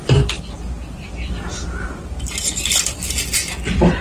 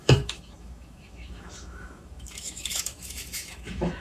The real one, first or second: first